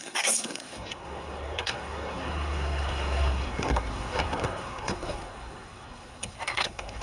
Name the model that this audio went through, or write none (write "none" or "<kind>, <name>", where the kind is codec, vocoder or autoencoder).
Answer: codec, SNAC